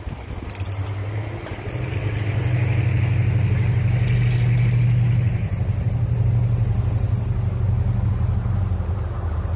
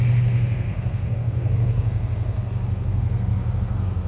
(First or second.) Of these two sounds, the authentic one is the first